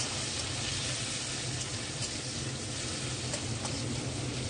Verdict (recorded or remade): recorded